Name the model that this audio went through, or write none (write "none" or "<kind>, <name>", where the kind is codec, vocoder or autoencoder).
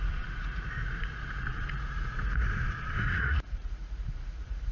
vocoder, Vocos